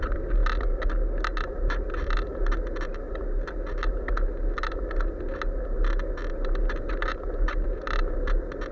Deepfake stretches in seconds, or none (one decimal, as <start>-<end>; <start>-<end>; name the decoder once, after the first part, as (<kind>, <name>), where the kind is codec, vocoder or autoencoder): 0.0-0.4 (vocoder, BigVGAN v2); 1.5-2.3; 7.0-8.7